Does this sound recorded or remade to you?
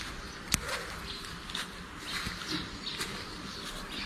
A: recorded